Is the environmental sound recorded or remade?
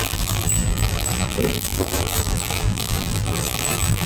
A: remade